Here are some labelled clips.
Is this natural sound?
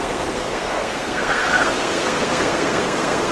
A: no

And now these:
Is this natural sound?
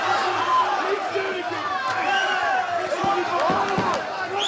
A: yes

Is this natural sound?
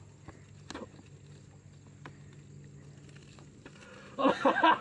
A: yes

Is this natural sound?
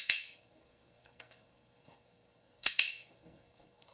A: no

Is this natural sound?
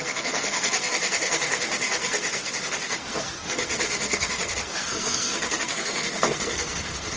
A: no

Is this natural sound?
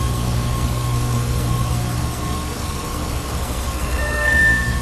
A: no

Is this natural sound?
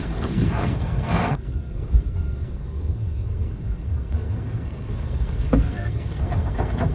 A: no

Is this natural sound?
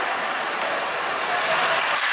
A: yes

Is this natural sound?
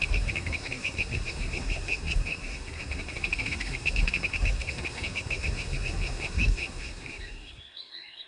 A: no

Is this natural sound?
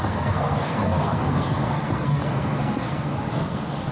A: no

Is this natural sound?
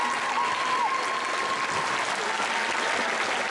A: yes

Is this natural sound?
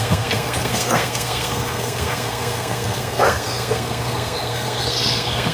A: no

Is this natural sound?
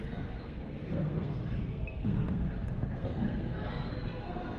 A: no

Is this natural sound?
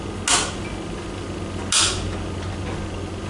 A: yes